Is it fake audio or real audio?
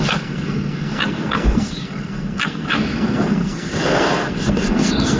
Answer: fake